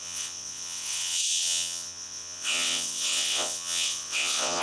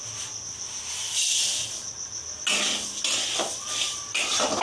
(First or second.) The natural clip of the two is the second